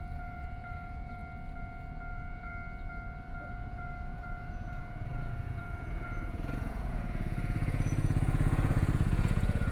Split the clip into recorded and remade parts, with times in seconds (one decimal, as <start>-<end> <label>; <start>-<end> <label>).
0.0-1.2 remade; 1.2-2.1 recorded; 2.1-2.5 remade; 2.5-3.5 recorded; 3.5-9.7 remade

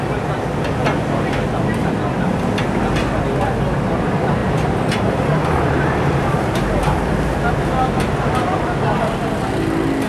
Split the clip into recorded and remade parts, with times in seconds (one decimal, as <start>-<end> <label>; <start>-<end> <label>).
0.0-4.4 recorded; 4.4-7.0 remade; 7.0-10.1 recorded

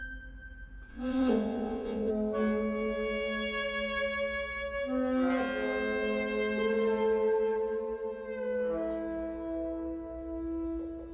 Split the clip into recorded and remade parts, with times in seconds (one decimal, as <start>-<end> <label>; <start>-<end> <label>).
0.0-0.9 recorded; 0.9-2.1 remade; 2.1-11.1 recorded

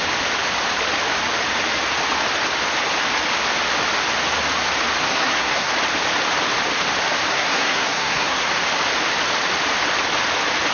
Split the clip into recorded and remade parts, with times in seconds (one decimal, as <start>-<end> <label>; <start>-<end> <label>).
0.0-5.1 recorded; 5.1-5.7 remade; 5.7-7.3 recorded; 7.3-8.4 remade; 8.4-10.7 recorded

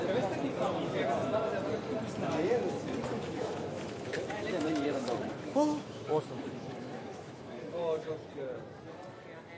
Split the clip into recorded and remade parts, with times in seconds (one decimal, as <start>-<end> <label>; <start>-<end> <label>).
0.0-3.1 recorded; 3.1-8.1 remade; 8.1-9.6 recorded

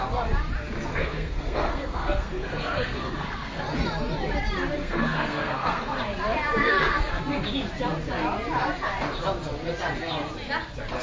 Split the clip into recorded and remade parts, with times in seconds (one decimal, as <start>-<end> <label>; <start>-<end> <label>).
0.0-0.9 recorded; 0.9-3.6 remade; 3.6-4.8 recorded; 4.8-6.0 remade; 6.0-6.6 recorded; 6.6-7.2 remade; 7.2-11.0 recorded

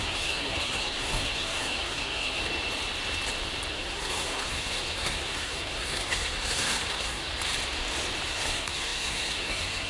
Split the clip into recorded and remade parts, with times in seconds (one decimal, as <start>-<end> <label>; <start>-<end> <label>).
0.0-2.4 remade; 2.4-3.7 recorded; 3.7-7.3 remade; 7.3-8.3 recorded; 8.3-9.9 remade